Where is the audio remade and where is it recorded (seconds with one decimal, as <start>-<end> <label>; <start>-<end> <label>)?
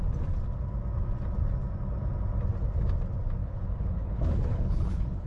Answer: 0.0-3.4 recorded; 3.4-5.3 remade